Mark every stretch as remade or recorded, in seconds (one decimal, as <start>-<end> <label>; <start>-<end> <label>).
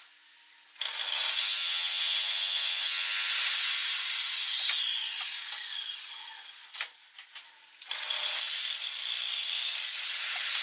0.0-1.4 recorded; 1.4-3.3 remade; 3.3-10.6 recorded